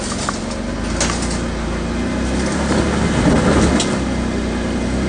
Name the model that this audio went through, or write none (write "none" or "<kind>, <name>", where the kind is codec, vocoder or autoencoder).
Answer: none